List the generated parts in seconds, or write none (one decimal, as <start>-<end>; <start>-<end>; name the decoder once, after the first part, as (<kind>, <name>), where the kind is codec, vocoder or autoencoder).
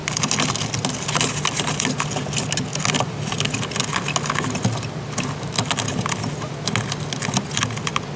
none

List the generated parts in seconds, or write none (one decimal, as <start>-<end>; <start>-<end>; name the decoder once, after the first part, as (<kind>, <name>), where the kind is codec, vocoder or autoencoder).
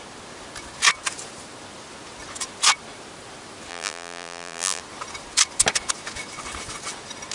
3.7-4.8 (vocoder, BigVGAN v2)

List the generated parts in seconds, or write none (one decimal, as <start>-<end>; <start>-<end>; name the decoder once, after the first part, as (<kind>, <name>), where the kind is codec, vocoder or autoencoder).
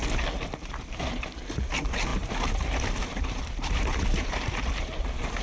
2.1-5.4 (vocoder, BigVGAN v2)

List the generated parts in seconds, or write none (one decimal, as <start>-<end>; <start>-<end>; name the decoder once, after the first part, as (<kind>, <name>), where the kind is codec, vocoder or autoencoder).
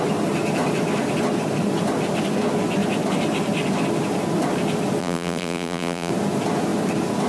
5.0-6.1 (vocoder, BigVGAN v2)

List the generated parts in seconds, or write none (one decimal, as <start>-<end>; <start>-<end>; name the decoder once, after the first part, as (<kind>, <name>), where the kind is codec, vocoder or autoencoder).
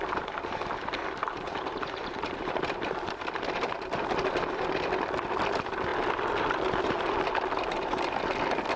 1.2-3.1 (vocoder, BigVGAN v2)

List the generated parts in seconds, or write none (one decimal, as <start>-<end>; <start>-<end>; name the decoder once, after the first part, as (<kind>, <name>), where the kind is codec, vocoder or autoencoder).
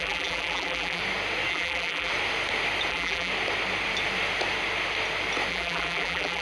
0.0-1.0 (vocoder, BigVGAN v2); 1.5-2.1; 2.9-3.3; 5.5-6.4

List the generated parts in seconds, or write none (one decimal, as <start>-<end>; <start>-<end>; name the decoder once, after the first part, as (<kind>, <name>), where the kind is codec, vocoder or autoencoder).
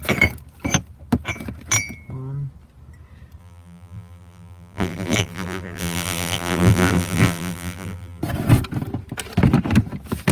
3.4-8.2 (vocoder, BigVGAN v2)